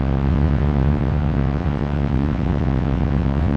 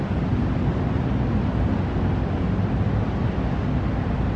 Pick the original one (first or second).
second